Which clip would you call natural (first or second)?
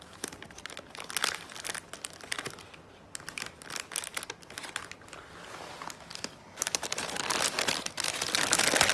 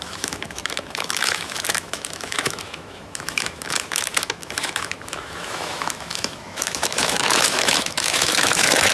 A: first